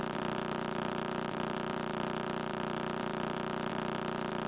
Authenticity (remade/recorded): remade